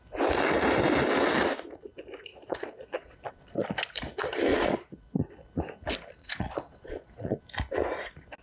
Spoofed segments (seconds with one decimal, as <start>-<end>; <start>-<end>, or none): 2.3-3.3; 4.5-5.3; 6.2-7.4

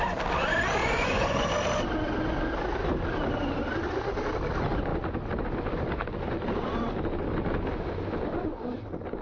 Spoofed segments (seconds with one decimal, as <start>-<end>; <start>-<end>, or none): 0.8-1.5

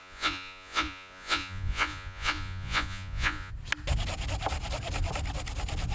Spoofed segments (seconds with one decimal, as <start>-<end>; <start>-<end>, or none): 0.0-3.5

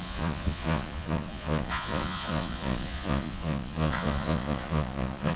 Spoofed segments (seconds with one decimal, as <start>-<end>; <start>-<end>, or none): 0.0-5.4

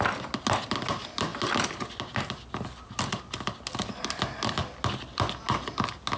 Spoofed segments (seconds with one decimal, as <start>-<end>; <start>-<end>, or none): none

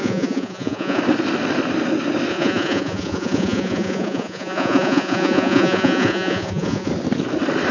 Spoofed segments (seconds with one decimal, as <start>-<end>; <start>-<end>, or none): 0.0-1.0; 2.3-6.9

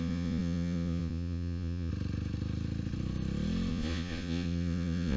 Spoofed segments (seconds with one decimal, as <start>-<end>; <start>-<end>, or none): 0.0-1.9; 3.7-5.2

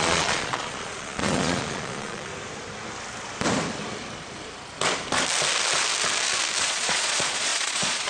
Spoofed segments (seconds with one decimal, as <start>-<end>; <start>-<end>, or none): 0.0-2.3; 6.6-8.1